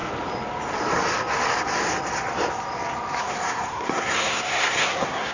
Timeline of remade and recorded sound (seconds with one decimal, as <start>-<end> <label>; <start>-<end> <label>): 0.0-3.2 recorded; 3.2-5.3 remade

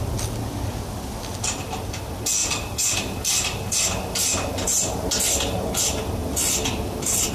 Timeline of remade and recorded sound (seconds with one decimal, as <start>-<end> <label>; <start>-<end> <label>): 0.0-2.4 recorded; 2.4-5.8 remade; 5.8-6.2 recorded; 6.2-7.3 remade

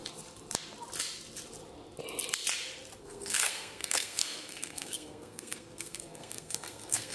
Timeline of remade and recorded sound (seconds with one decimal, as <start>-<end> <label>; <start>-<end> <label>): 0.0-3.0 recorded; 3.0-7.1 remade